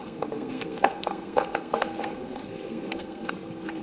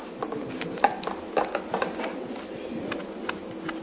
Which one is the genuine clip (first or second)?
second